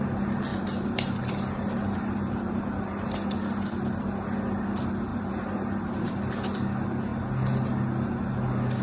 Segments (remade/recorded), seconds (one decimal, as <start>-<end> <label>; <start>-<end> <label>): 0.0-0.5 recorded; 0.5-2.6 remade; 2.6-5.1 recorded; 5.1-6.1 remade; 6.1-8.8 recorded